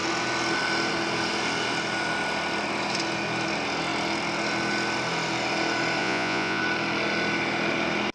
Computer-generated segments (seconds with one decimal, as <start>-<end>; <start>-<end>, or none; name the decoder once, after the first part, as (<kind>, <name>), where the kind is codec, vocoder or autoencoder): 6.0-6.6 (vocoder, Vocos)